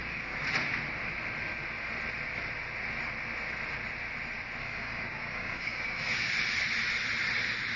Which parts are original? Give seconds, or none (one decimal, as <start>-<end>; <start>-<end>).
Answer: 0.5-4.6; 6.3-7.8